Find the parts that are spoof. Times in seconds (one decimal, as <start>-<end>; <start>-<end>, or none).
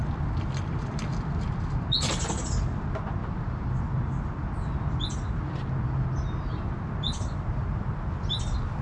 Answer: 3.2-3.8